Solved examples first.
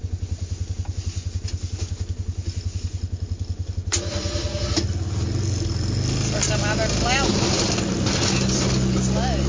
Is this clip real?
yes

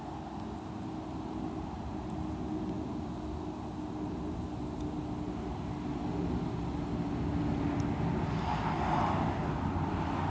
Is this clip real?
yes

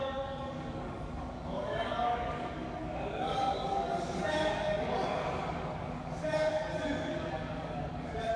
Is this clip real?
no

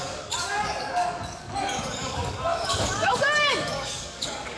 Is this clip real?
no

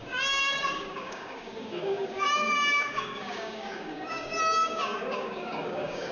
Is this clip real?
no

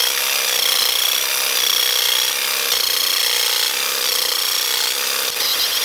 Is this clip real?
yes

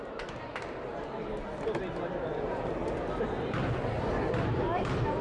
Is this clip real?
yes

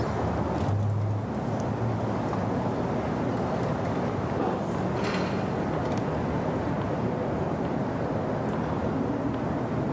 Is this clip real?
yes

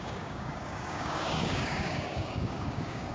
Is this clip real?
no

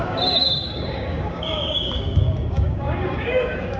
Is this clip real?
no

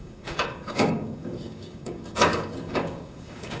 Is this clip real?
no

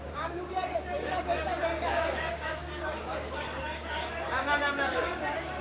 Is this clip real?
no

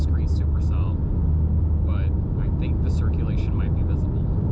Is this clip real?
yes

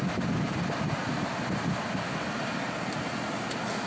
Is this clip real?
yes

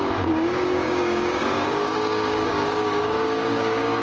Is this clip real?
no